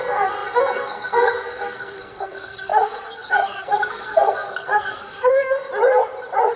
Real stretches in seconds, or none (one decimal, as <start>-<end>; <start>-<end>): 5.7-6.6

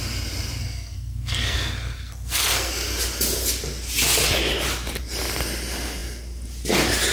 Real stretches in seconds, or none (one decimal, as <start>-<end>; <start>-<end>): 0.0-0.6; 2.7-7.1

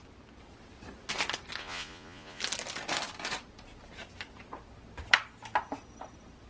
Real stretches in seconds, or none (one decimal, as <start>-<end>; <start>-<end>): 0.0-1.6; 2.4-6.5

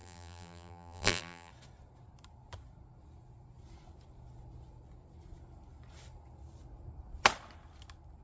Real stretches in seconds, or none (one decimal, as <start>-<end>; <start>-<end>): 1.5-8.2

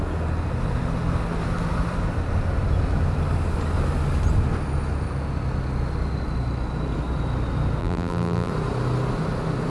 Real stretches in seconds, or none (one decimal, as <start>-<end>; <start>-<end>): 0.0-7.8; 8.5-9.7